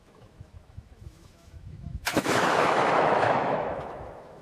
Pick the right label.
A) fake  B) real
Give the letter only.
A